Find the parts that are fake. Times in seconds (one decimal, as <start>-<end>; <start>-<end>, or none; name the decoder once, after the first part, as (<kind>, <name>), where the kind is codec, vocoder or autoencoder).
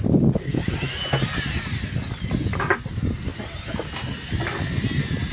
none